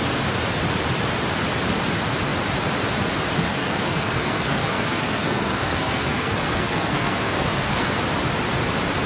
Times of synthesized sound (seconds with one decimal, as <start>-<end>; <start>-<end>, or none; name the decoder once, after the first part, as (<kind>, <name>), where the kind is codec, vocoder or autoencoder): 3.5-8.0 (codec, SNAC)